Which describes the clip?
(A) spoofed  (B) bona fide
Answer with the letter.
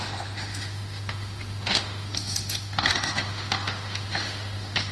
A